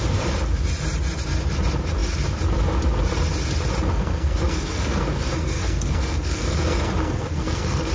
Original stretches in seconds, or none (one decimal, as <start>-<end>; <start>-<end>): 0.0-3.9